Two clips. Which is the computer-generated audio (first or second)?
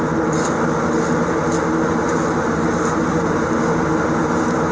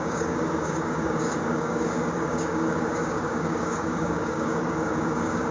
second